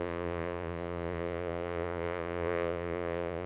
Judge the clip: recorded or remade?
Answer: remade